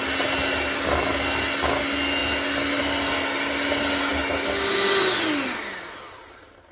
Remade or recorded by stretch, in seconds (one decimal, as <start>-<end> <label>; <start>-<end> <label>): 0.0-6.7 recorded